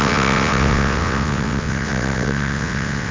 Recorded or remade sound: remade